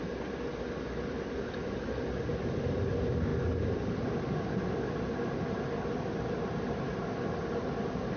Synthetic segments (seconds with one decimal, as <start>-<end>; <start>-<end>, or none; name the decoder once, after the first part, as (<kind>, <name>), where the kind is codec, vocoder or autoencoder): none